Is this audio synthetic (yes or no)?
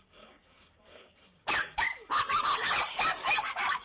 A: yes